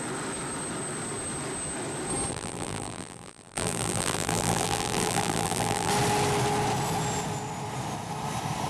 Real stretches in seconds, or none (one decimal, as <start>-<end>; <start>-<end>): 0.0-2.3; 5.9-8.7